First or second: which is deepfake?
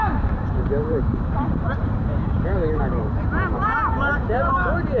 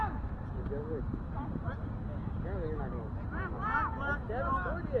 first